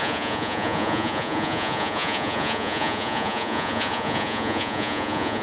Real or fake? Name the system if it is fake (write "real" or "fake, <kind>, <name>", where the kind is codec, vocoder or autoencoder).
fake, vocoder, Vocos